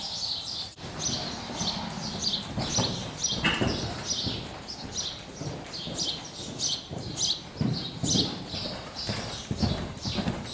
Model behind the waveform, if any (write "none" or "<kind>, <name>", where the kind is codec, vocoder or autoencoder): none